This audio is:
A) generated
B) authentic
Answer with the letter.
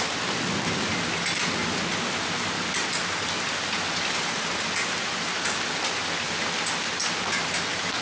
B